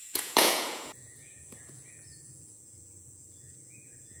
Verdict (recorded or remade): remade